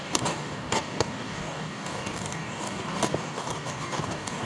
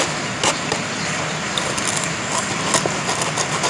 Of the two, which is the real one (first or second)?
second